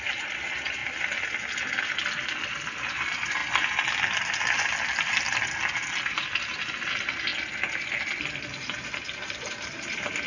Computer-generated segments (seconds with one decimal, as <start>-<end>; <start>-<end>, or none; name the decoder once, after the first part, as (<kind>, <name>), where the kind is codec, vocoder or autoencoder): 0.0-0.8 (vocoder, BigVGAN v2); 2.9-3.4; 6.1-7.3; 8.6-10.3